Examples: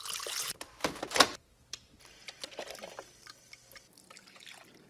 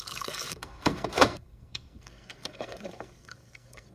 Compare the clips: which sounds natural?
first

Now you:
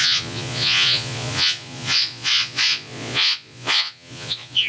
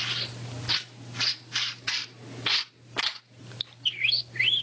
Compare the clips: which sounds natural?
second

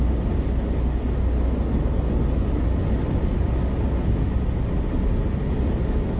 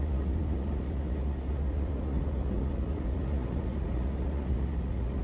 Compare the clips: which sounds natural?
first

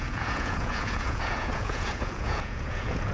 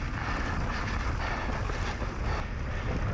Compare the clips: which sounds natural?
second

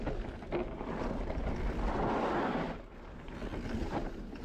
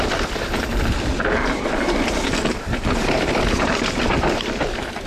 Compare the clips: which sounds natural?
first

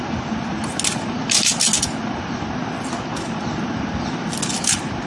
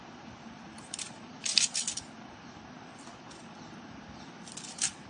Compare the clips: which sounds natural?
first